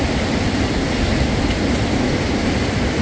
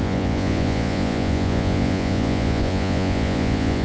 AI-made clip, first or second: second